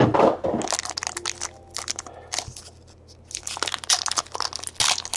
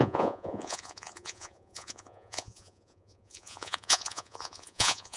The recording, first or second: first